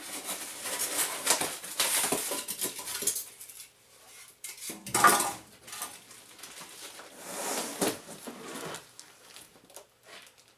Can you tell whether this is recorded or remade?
recorded